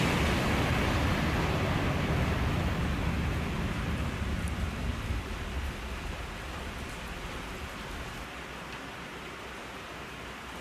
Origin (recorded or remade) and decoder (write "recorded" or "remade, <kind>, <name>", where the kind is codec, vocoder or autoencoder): recorded